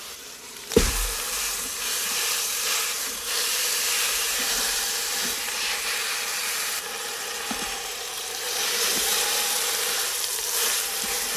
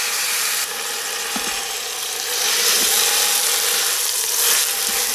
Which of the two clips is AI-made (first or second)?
first